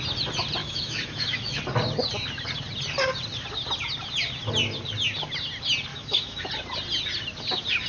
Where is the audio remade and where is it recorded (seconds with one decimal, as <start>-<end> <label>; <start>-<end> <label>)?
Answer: 0.0-0.6 recorded; 0.6-1.6 remade; 1.6-5.9 recorded; 5.9-6.5 remade; 6.5-7.9 recorded